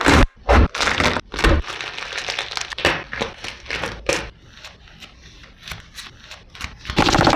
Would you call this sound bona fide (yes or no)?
yes